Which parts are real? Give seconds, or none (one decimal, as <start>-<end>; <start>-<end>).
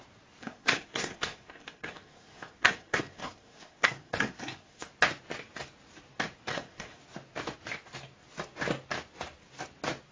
0.0-0.4; 4.9-6.5; 7.0-10.1